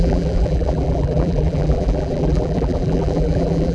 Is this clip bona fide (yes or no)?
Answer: no